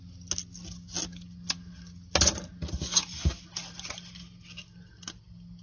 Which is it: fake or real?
real